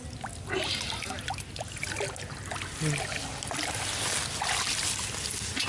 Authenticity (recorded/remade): recorded